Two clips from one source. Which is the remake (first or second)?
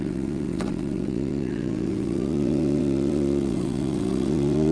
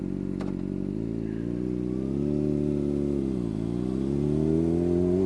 first